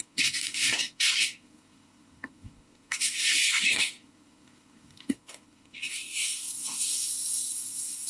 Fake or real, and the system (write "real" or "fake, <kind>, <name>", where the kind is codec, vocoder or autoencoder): fake, codec, SNAC